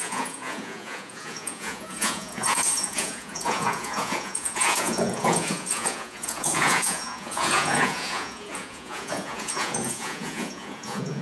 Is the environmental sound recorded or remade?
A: remade